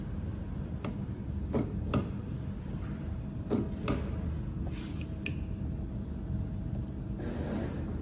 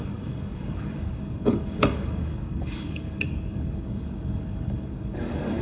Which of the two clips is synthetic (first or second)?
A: second